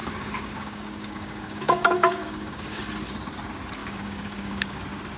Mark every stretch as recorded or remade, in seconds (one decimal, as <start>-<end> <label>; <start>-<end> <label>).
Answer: 0.0-2.8 remade; 2.8-3.8 recorded; 3.8-4.8 remade; 4.8-5.2 recorded